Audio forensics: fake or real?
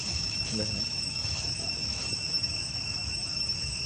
fake